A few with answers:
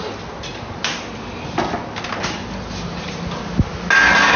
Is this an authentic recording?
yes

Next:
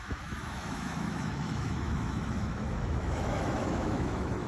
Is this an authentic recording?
no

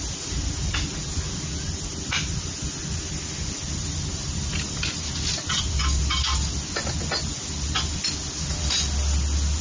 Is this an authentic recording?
yes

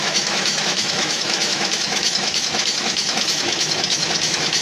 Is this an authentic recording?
no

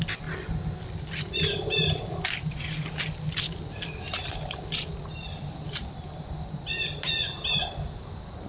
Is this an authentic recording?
yes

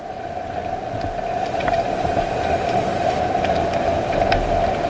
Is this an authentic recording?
yes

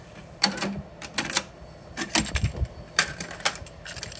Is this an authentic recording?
yes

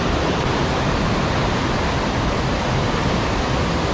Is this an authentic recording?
yes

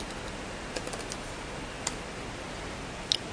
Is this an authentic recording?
yes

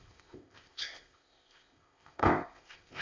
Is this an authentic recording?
no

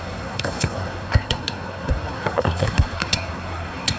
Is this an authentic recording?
no